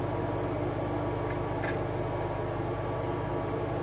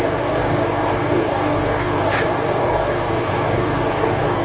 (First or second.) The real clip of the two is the first